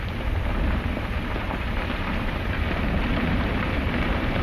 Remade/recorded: remade